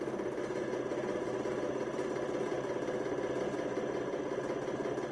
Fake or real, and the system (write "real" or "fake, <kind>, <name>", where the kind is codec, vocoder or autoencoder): real